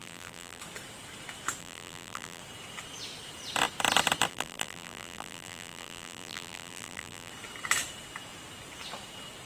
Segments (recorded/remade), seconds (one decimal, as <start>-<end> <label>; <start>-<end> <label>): 0.0-0.6 remade; 0.6-1.6 recorded; 1.6-2.4 remade; 2.4-4.3 recorded; 4.3-7.3 remade; 7.3-9.5 recorded